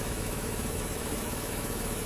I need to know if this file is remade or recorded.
remade